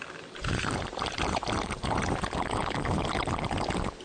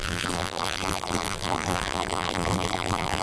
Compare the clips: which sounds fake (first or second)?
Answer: second